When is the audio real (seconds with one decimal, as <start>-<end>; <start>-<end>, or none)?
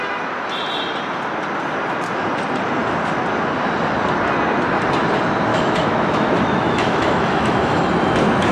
0.0-5.5; 7.8-8.5